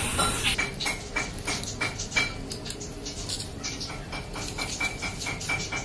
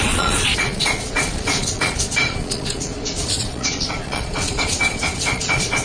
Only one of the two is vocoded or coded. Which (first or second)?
second